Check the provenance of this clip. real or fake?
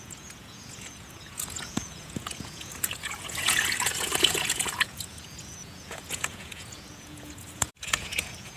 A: fake